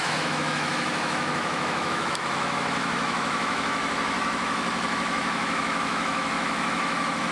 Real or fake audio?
fake